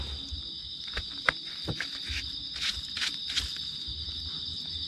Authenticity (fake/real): real